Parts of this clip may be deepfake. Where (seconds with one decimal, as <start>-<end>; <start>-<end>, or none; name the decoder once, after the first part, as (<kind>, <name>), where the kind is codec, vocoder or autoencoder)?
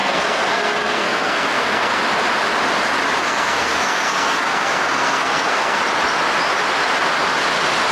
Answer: 0.0-2.0 (codec, SNAC); 3.2-5.8